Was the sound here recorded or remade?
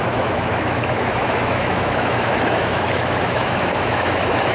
remade